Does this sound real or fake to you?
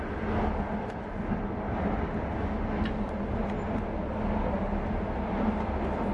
real